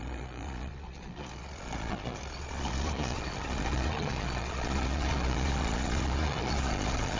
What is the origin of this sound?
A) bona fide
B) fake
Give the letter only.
B